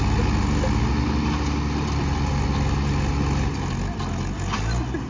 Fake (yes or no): no